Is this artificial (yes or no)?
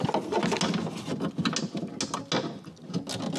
no